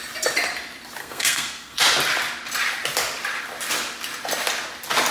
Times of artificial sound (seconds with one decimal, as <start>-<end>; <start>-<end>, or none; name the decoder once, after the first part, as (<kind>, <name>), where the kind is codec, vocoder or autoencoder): 1.0-1.8 (codec, SNAC)